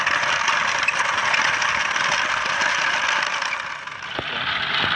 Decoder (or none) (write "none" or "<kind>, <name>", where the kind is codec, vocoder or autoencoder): none